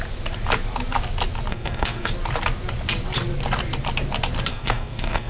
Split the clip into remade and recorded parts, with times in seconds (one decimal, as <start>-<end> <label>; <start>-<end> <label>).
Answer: 0.0-1.5 recorded; 1.5-2.1 remade; 2.1-4.5 recorded; 4.5-5.3 remade